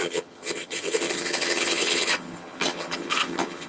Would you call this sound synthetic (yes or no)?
yes